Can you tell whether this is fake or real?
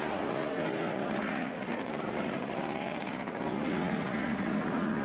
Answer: fake